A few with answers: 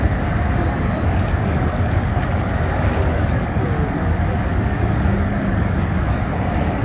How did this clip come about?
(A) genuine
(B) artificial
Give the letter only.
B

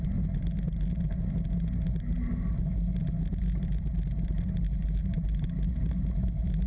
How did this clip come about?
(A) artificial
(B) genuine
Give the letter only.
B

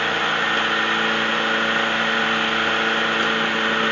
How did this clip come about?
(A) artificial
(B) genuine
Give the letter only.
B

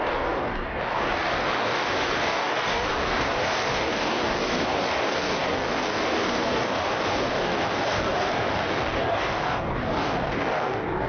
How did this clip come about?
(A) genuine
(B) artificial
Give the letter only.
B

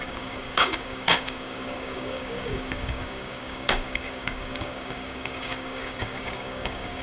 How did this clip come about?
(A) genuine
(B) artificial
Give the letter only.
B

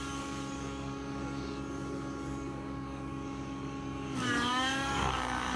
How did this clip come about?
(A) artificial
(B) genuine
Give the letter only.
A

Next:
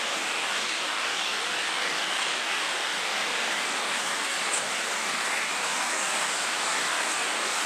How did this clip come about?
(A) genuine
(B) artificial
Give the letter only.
B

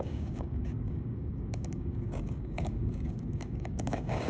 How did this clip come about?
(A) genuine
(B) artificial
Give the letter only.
B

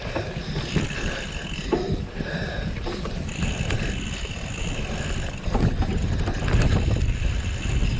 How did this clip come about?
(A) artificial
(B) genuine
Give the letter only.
B